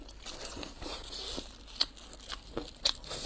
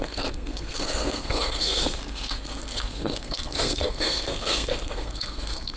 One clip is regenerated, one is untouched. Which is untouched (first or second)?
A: first